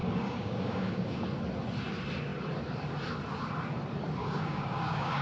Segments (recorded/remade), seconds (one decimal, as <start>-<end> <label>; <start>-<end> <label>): 0.0-1.2 remade; 1.2-4.2 recorded; 4.2-5.2 remade